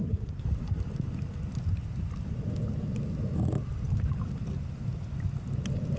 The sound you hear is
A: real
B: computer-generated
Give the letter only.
A